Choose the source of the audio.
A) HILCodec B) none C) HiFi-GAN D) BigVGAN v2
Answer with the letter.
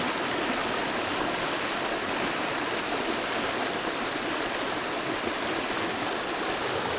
B